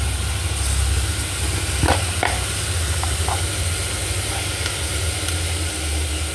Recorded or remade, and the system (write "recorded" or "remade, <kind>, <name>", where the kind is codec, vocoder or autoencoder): recorded